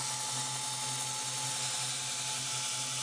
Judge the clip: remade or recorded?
recorded